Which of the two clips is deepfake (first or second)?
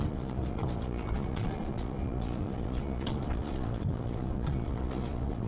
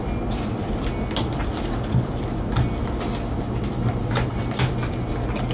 first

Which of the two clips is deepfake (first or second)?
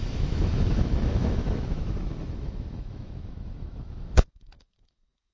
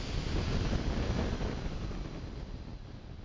first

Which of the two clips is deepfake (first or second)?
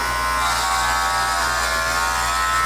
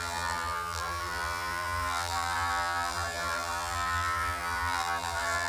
second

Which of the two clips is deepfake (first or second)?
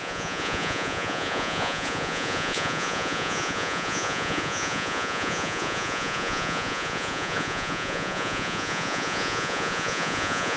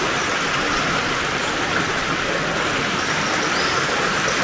first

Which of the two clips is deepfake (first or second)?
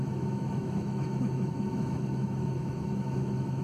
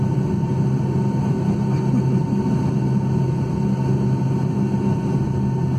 first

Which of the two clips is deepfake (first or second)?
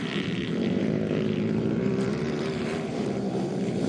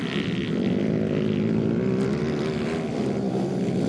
first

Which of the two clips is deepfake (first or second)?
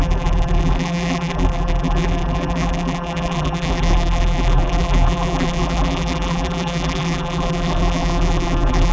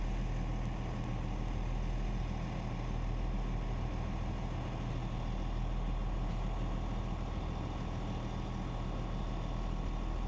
first